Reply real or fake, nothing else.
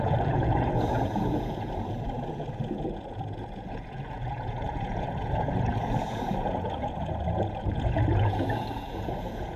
fake